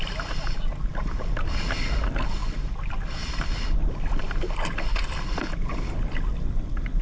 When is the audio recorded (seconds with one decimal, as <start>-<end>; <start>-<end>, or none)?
0.0-7.0